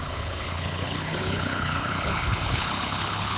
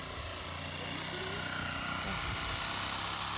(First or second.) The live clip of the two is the second